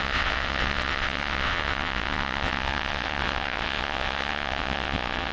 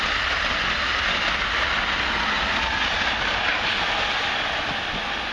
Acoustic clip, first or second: second